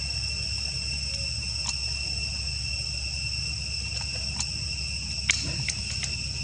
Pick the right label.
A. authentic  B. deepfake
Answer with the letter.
A